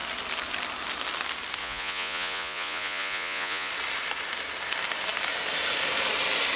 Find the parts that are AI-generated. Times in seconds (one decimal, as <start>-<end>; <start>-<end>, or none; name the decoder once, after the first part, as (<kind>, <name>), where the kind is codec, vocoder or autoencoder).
1.6-3.7 (vocoder, Vocos)